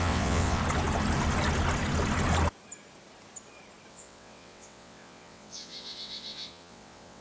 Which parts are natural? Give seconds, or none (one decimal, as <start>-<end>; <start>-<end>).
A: 0.6-3.9